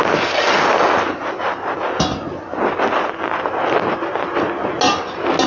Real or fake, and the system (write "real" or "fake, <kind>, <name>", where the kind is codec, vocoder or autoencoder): real